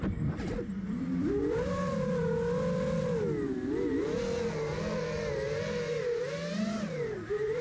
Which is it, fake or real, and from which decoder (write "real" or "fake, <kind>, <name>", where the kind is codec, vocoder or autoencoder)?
real